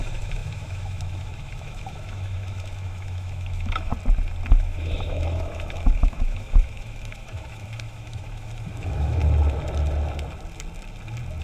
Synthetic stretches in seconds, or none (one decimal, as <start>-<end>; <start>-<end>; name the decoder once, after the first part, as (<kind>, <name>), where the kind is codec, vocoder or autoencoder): 0.0-3.9 (autoencoder, DAC-VAE); 4.5-9.2